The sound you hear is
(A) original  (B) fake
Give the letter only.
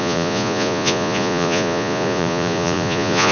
B